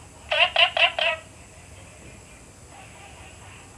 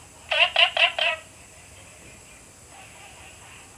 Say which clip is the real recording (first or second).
first